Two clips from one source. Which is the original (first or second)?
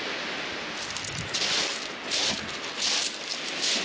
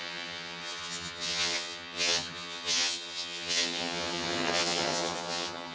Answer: first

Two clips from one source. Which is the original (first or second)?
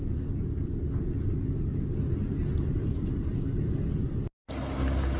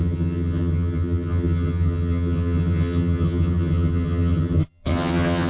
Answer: first